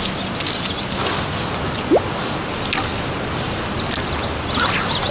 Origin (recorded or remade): recorded